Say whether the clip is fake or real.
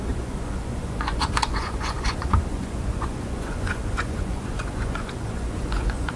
fake